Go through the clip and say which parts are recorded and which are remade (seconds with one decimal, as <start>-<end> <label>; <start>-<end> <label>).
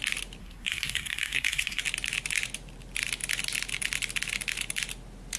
0.0-0.4 recorded; 0.4-1.8 remade; 1.8-5.4 recorded